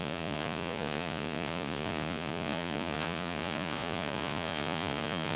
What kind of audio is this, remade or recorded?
remade